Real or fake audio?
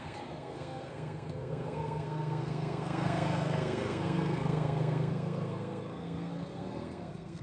fake